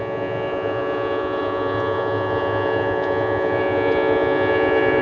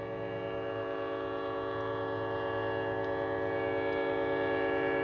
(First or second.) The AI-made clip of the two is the first